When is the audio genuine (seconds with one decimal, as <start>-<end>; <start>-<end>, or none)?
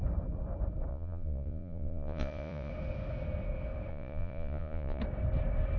0.0-0.9; 2.7-3.9; 5.0-5.8